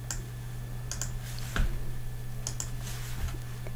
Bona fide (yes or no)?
yes